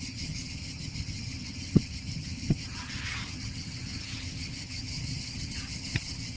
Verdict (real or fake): fake